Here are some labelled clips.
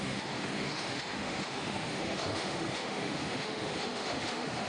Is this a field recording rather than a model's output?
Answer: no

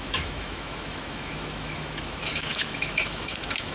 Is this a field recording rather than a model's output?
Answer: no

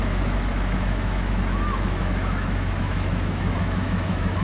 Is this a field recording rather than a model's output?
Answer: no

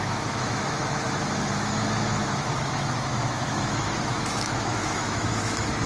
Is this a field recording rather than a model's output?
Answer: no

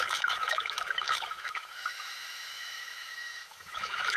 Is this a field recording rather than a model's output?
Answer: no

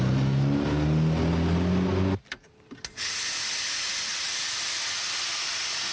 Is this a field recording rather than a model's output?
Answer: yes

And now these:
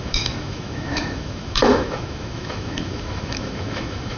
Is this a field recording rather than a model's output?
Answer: no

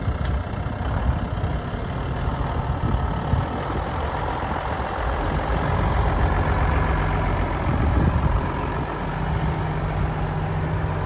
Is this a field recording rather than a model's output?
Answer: yes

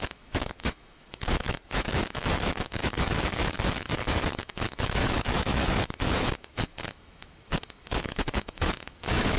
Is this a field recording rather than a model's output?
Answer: no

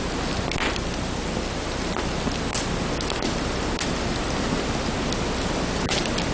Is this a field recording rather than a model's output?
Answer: yes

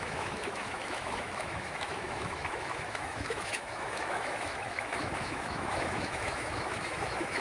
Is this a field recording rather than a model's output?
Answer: no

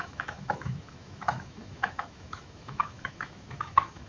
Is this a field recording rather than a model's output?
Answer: no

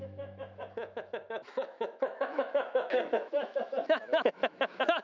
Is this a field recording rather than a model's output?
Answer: no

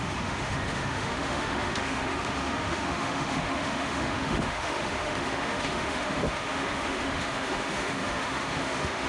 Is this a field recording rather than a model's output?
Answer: no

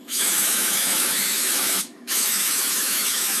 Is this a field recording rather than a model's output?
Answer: no